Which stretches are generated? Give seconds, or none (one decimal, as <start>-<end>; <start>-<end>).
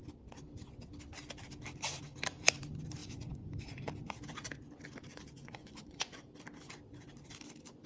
3.0-3.9; 5.1-6.2